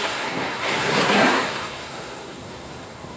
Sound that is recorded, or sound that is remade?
remade